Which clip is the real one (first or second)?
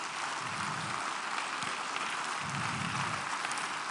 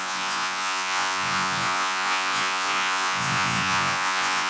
first